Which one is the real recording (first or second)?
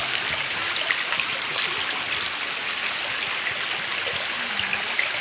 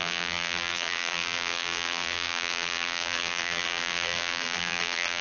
first